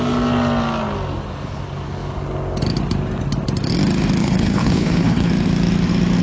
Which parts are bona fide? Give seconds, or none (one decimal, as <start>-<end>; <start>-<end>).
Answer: 0.0-4.2; 5.3-6.2